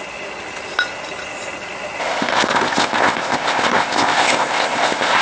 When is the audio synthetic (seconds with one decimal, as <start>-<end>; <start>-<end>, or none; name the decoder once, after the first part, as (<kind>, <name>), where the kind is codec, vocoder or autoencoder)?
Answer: 2.0-5.2 (codec, ZipCodec)

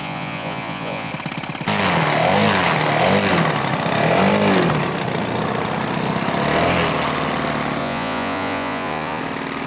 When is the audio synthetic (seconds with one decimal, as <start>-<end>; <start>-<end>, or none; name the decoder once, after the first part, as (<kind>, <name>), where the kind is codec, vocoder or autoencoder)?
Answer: 0.0-1.1 (vocoder, Vocos); 7.8-9.2